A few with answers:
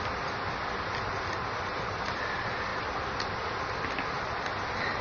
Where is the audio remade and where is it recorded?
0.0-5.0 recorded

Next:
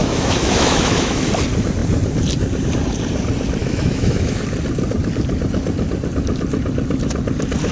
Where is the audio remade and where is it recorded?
0.0-1.3 remade; 1.3-3.6 recorded; 3.6-4.4 remade; 4.4-7.7 recorded

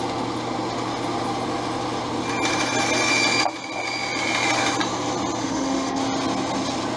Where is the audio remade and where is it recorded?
0.0-5.4 recorded; 5.4-6.0 remade; 6.0-7.0 recorded

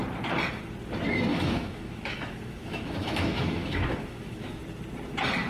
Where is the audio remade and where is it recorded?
0.0-1.3 recorded; 1.3-4.6 remade; 4.6-5.5 recorded

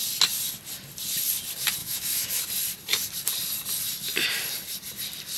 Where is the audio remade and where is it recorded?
0.0-1.8 recorded; 1.8-2.4 remade; 2.4-5.4 recorded

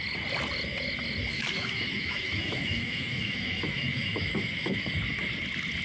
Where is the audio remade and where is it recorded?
0.0-1.3 recorded; 1.3-4.8 remade; 4.8-5.8 recorded